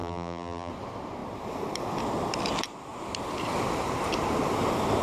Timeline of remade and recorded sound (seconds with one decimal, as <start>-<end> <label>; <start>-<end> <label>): 0.0-0.7 remade; 0.7-5.0 recorded